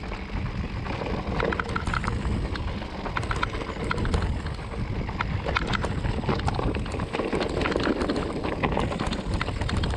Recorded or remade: recorded